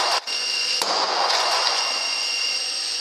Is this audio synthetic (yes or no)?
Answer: yes